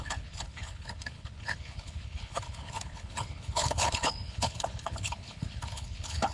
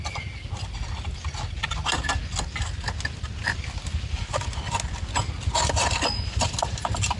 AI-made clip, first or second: first